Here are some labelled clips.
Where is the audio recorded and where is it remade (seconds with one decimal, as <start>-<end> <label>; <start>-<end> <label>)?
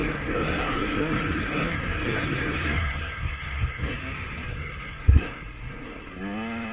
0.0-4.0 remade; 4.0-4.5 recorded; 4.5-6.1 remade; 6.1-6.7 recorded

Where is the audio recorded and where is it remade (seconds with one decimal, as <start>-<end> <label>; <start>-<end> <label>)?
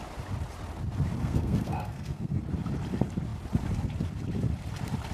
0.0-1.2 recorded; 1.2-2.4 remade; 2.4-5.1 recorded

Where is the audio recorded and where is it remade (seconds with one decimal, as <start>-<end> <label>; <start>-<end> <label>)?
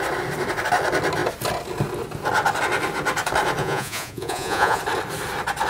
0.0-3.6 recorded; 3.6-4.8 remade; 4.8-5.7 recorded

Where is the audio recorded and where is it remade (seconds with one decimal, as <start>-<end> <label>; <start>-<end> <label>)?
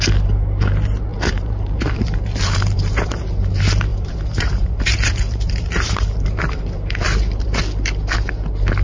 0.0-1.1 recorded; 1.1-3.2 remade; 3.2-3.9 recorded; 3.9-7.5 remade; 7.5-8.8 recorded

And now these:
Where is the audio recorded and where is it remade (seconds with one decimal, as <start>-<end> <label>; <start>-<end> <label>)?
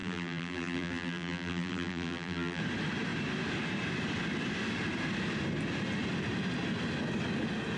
0.0-2.6 remade; 2.6-7.8 recorded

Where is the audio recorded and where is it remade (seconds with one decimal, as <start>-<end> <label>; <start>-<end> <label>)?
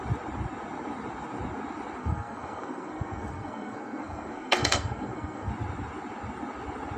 0.0-2.0 recorded; 2.0-5.5 remade; 5.5-7.0 recorded